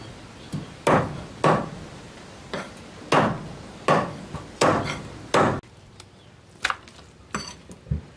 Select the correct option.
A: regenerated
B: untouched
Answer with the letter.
B